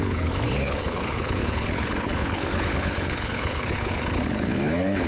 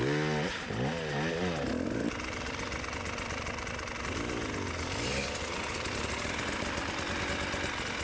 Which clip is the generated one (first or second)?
first